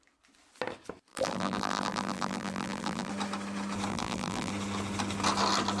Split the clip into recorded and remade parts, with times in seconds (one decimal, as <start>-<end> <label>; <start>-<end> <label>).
0.0-1.1 recorded; 1.1-3.1 remade; 3.1-3.9 recorded; 3.9-4.5 remade; 4.5-5.8 recorded